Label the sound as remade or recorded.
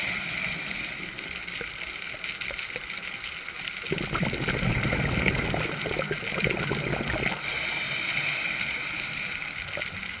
recorded